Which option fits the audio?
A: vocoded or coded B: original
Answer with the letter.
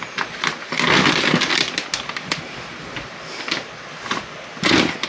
B